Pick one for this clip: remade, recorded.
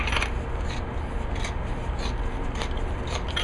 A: recorded